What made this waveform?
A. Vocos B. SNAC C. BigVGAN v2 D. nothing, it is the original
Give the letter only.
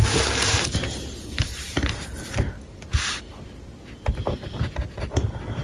D